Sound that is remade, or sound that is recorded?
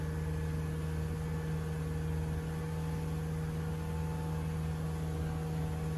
recorded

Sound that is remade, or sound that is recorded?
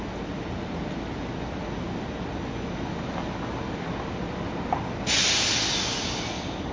recorded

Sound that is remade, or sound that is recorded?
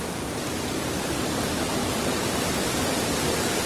recorded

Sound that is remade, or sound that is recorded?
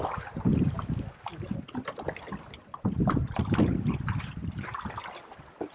remade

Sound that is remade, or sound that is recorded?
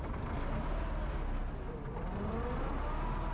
recorded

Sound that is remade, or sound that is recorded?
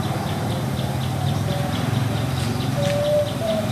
recorded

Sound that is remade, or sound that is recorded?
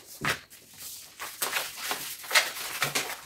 recorded